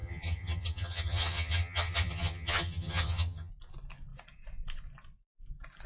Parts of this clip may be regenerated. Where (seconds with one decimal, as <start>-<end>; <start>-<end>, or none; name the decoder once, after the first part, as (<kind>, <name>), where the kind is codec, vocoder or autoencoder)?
0.0-3.5 (vocoder, HiFi-GAN)